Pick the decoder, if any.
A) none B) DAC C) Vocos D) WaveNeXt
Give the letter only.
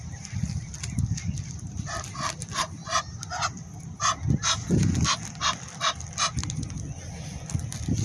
A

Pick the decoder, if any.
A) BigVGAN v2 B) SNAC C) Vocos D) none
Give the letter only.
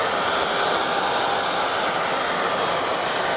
D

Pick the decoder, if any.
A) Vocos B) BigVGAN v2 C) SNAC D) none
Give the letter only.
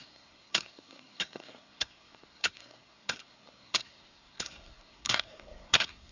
C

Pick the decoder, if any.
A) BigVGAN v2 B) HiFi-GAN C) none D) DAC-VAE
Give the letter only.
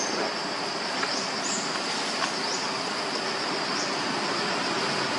C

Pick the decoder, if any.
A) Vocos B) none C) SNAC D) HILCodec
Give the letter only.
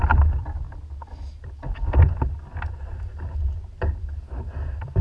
B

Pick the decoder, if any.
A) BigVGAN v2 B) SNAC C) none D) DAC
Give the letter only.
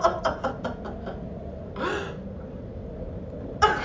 C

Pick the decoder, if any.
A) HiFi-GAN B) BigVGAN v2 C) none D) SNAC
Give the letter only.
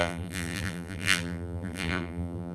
B